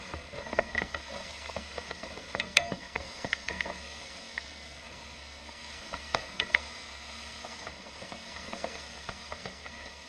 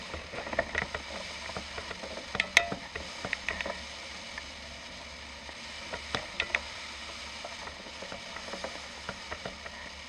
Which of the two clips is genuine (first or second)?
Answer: second